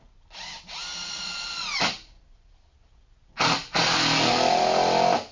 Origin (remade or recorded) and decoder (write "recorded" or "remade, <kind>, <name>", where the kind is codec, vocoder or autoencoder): recorded